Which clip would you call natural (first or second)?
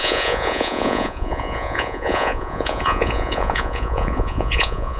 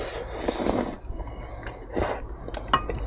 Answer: second